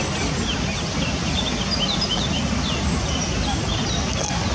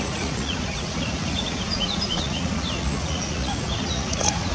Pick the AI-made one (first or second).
second